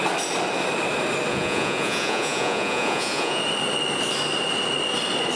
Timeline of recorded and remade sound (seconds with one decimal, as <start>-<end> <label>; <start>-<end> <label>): 0.0-1.3 recorded; 1.3-3.4 remade; 3.4-5.4 recorded